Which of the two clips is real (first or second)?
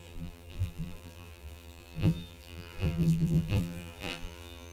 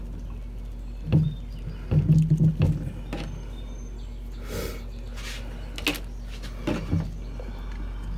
second